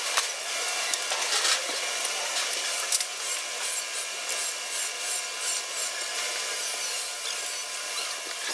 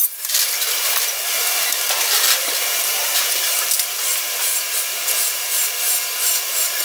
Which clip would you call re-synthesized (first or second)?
second